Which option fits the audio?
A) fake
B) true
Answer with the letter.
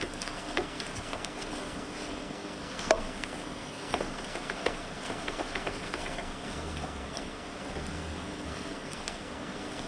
A